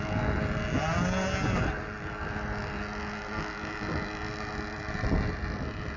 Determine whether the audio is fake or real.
real